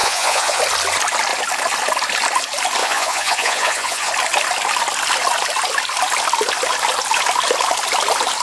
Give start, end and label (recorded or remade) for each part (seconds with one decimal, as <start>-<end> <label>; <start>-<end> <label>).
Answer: 0.0-0.6 remade; 0.6-2.8 recorded; 2.8-4.1 remade; 4.1-8.4 recorded